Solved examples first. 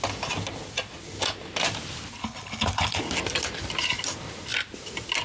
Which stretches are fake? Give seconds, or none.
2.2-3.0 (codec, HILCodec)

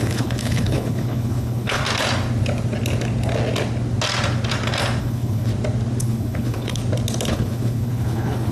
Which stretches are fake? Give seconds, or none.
0.0-1.8 (codec, HILCodec); 5.0-5.5; 6.0-6.8; 7.3-8.5

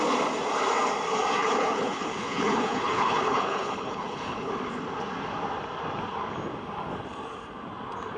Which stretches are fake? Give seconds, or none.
1.4-4.5 (codec, HILCodec)

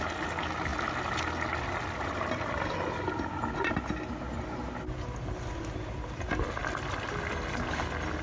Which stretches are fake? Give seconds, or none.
none

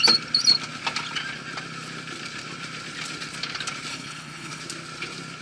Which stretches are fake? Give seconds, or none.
3.9-4.6 (codec, HILCodec)

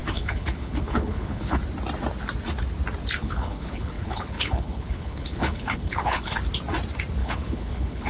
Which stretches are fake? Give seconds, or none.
0.0-1.6 (codec, HILCodec); 3.2-6.4; 7.2-8.1